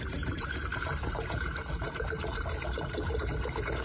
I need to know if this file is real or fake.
fake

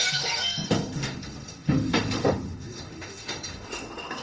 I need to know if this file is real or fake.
fake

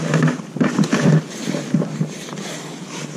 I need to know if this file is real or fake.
real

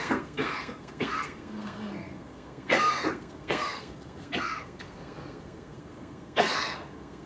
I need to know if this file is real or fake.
fake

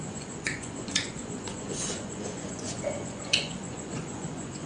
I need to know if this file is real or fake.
fake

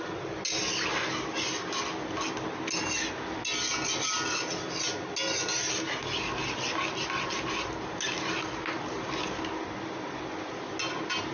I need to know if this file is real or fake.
real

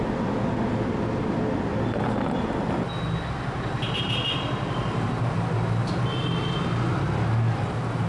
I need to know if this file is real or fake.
real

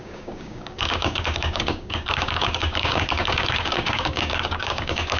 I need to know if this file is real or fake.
fake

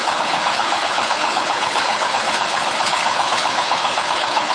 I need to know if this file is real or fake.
fake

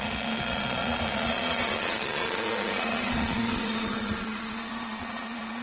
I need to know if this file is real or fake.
fake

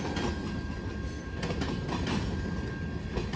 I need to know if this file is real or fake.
real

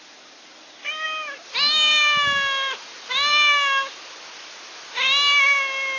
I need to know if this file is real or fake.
real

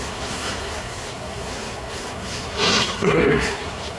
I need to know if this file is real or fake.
fake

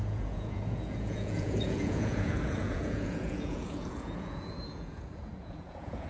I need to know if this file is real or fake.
fake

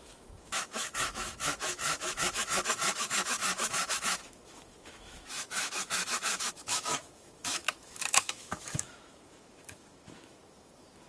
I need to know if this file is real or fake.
fake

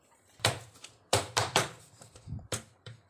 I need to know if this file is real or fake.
fake